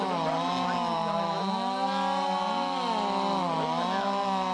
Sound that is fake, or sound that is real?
real